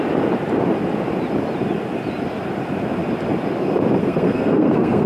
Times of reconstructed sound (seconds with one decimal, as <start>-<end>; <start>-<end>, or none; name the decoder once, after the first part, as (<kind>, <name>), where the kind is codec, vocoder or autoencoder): 4.0-5.1 (codec, SNAC)